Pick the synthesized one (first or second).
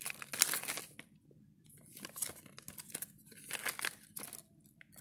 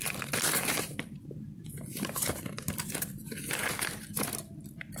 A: second